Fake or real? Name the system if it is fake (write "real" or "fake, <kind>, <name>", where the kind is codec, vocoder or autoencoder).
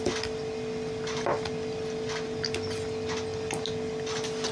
real